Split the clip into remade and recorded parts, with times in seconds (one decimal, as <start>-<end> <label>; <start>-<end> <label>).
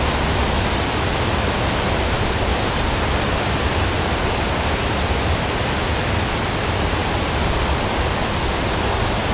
0.0-9.3 recorded